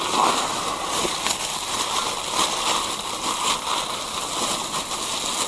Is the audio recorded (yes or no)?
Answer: yes